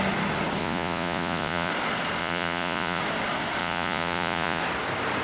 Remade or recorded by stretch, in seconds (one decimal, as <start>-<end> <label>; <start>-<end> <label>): 0.0-0.6 recorded; 0.6-1.7 remade; 1.7-2.2 recorded; 2.2-3.0 remade; 3.0-3.6 recorded; 3.6-4.6 remade; 4.6-5.2 recorded